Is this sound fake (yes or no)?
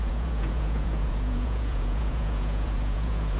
yes